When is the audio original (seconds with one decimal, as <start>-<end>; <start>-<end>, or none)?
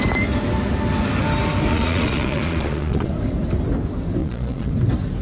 0.0-1.7; 3.1-4.2; 4.7-5.2